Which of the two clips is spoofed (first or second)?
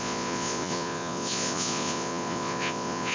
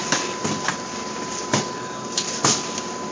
first